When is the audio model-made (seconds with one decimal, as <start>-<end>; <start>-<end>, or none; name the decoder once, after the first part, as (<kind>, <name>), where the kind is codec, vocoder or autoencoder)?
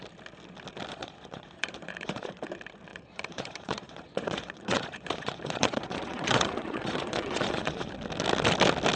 0.9-2.5 (vocoder, Vocos); 2.9-7.9